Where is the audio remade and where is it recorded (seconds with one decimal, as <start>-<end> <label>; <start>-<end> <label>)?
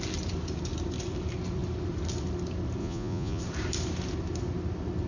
0.0-2.8 recorded; 2.8-3.4 remade; 3.4-5.1 recorded